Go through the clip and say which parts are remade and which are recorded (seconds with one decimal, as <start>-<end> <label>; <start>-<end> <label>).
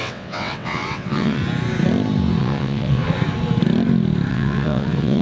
0.0-1.4 remade; 1.4-2.4 recorded; 2.4-3.0 remade; 3.0-4.3 recorded; 4.3-5.2 remade